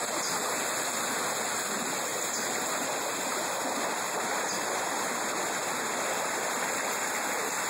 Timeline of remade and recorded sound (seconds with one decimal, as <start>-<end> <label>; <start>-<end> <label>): 0.0-2.1 recorded; 2.1-6.7 remade; 6.7-7.7 recorded